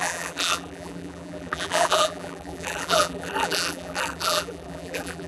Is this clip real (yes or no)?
no